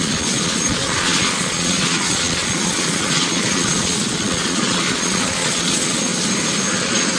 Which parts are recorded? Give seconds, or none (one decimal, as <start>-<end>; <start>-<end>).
6.1-6.7